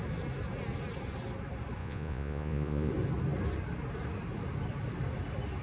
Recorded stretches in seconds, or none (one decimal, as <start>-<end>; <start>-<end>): 0.0-1.8; 2.9-5.6